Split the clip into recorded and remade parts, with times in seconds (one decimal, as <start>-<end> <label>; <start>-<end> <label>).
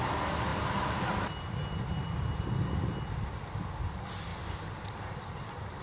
0.0-4.3 recorded; 4.3-5.2 remade; 5.2-5.8 recorded